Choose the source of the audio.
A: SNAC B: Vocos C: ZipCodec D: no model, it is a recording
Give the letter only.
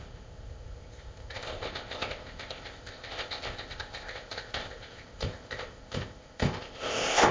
C